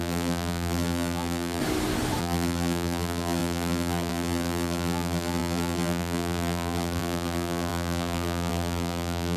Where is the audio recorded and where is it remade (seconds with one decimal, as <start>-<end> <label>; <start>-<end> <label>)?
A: 0.0-1.6 remade; 1.6-2.2 recorded; 2.2-9.4 remade